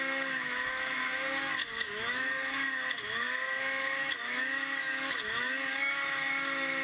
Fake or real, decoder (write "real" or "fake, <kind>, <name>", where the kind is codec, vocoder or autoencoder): fake, autoencoder, DAC-VAE